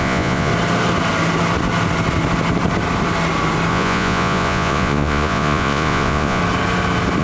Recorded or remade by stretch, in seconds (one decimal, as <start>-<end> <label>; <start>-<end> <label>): 0.0-0.5 remade; 0.5-3.7 recorded; 3.7-6.4 remade; 6.4-7.2 recorded